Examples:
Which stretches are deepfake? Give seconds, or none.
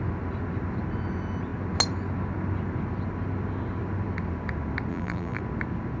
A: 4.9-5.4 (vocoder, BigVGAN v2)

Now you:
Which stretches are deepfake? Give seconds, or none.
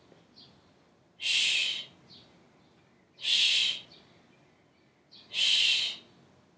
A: none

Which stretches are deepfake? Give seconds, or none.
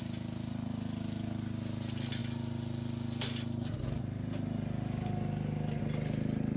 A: none